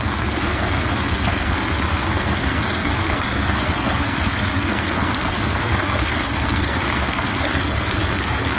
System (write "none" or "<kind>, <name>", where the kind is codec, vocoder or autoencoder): codec, SNAC